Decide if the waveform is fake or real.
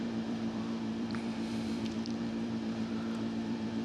fake